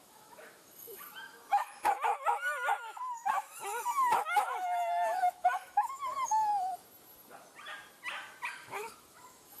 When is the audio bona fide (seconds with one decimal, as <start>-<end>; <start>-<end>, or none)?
6.5-8.5